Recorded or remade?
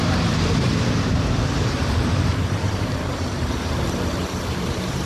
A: remade